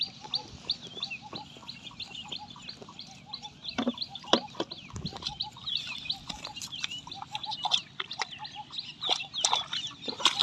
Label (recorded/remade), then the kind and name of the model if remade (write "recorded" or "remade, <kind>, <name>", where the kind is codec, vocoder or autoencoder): recorded